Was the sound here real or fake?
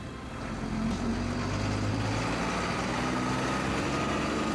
real